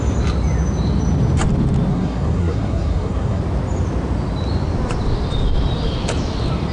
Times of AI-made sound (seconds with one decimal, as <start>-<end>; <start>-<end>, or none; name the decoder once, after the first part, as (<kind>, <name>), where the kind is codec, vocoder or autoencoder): 1.9-3.4 (codec, SNAC)